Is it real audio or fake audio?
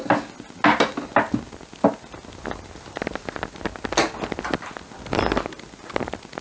real